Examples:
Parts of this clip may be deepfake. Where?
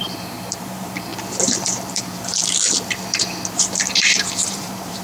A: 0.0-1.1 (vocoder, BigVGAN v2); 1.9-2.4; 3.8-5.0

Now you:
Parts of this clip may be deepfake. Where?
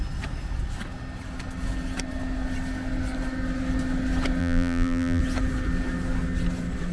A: 4.4-5.2 (vocoder, BigVGAN v2)